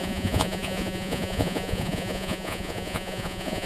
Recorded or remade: remade